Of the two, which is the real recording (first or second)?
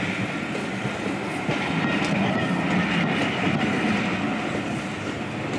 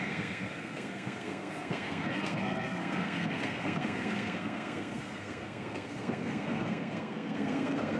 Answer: first